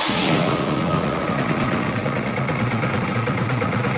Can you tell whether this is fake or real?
fake